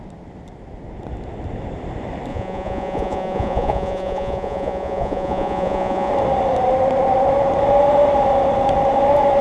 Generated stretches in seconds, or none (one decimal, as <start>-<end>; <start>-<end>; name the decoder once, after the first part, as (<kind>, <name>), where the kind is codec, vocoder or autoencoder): 2.3-6.1 (vocoder, Vocos)

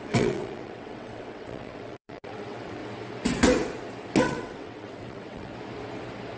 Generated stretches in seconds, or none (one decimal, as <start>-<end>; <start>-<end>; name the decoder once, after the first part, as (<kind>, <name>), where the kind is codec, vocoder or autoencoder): 0.0-2.8 (vocoder, WaveNeXt); 4.2-5.5

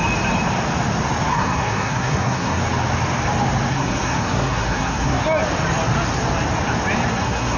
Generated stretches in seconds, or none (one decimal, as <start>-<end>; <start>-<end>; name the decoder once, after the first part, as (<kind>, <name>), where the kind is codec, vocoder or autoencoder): 1.3-2.6 (codec, SNAC); 3.7-5.2; 7.1-7.6

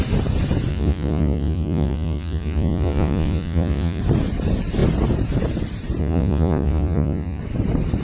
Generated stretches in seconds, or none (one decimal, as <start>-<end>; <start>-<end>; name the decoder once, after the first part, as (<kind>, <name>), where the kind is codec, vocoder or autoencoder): 0.7-4.0 (vocoder, Vocos); 6.0-7.4

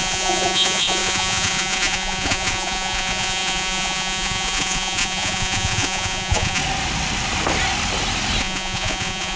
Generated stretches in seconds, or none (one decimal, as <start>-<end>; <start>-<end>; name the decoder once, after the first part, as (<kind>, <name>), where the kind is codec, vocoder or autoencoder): 0.0-6.6 (vocoder, Vocos); 8.4-9.4

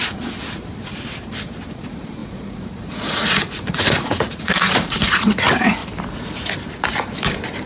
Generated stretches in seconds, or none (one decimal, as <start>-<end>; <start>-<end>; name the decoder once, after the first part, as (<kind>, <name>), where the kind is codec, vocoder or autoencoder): 0.0-0.9 (vocoder, Vocos); 1.7-5.8